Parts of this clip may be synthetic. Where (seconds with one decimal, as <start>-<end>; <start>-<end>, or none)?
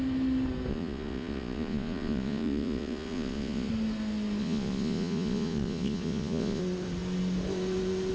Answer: 0.7-3.7; 4.4-6.6